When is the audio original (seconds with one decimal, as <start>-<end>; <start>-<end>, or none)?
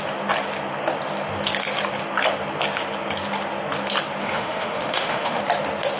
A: 0.0-4.2; 5.4-6.0